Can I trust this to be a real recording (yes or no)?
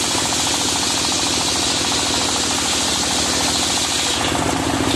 yes